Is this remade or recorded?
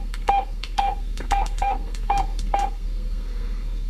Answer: remade